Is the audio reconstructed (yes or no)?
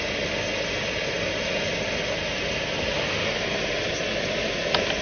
no